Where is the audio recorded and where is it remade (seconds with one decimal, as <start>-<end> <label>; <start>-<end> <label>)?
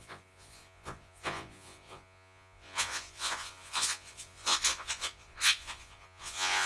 0.0-6.7 remade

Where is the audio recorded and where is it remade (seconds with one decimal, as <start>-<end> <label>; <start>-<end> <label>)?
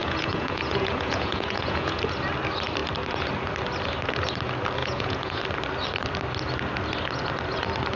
0.0-2.0 remade; 2.0-4.8 recorded; 4.8-5.4 remade; 5.4-8.0 recorded